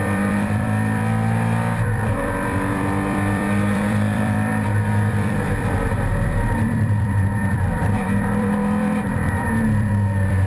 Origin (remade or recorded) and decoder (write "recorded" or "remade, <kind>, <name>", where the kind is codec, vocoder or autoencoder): remade, vocoder, BigVGAN v2